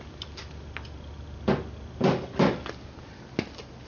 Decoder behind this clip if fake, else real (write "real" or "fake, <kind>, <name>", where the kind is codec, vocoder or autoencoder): real